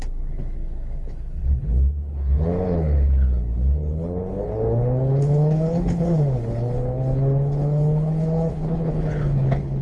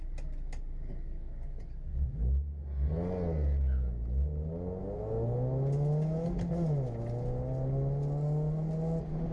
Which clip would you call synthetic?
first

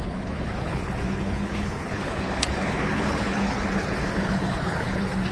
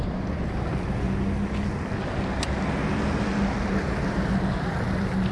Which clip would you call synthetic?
first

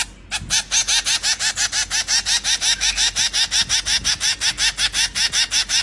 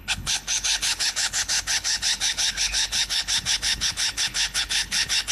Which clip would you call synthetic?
second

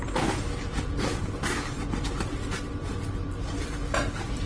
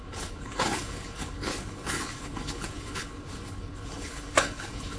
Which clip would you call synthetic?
second